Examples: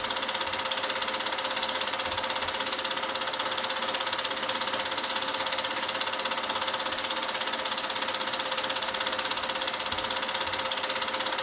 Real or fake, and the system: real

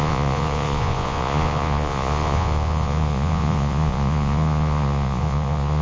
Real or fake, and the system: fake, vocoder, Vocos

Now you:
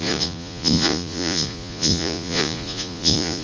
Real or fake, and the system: fake, vocoder, Vocos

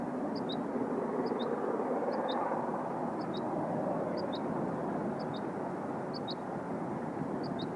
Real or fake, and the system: real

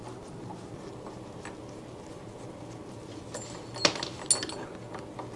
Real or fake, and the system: real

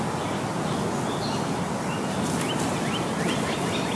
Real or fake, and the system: real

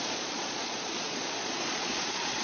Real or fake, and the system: fake, vocoder, Vocos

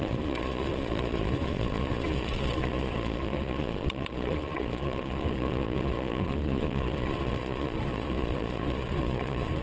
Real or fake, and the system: fake, vocoder, Vocos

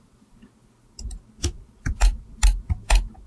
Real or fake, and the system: real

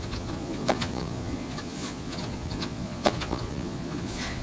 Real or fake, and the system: fake, vocoder, Vocos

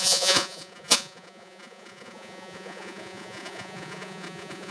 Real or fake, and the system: fake, vocoder, Vocos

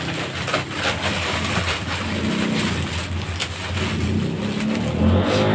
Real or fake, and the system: real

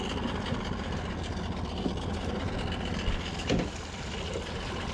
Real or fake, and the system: real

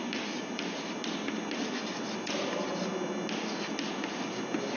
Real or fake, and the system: real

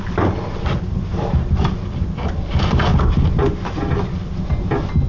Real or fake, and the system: real